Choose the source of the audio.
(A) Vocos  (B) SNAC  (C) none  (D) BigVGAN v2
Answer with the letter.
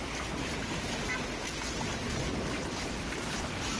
C